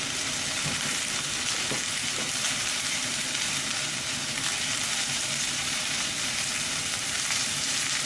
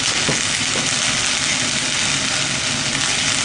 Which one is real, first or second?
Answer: second